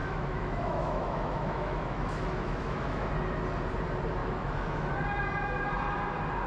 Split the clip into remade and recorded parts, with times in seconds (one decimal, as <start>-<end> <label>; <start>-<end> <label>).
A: 0.0-3.1 remade; 3.1-4.2 recorded; 4.2-4.9 remade; 4.9-6.5 recorded